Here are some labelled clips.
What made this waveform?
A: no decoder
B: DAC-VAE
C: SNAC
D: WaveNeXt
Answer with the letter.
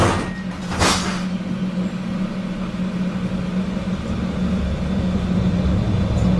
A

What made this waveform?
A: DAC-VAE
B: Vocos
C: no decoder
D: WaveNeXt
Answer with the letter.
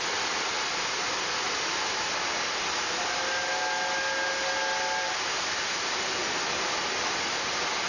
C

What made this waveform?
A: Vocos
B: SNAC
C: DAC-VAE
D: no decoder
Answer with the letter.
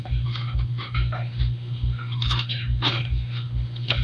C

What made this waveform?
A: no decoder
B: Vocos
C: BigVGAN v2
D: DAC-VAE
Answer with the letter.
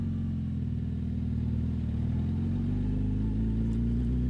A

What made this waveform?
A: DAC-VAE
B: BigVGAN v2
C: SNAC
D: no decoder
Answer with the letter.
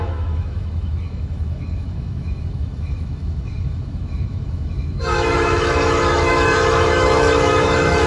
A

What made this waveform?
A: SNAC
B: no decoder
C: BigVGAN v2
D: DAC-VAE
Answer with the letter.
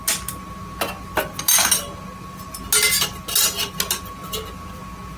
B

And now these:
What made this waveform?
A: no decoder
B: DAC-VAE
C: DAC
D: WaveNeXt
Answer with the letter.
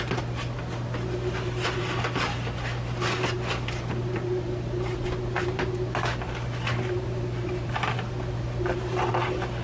A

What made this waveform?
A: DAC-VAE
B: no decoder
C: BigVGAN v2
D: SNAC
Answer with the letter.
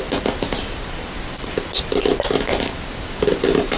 B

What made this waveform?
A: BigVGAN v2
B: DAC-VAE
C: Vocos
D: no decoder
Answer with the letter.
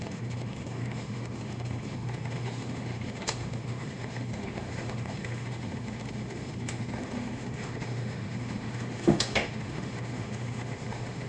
B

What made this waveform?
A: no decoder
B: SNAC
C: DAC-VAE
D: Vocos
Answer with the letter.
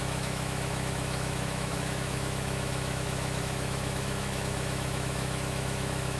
C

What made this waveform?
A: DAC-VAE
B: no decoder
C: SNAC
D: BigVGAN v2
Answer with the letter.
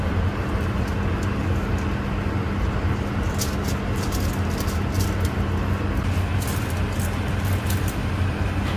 B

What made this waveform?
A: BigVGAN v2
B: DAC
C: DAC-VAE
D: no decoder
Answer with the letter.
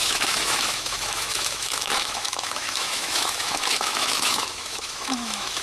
C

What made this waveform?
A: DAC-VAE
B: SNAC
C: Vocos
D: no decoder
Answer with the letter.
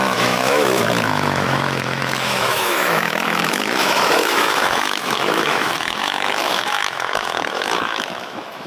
A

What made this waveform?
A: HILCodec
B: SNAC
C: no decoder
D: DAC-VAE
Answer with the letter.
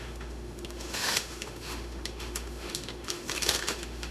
D